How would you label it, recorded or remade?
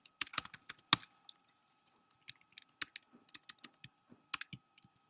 recorded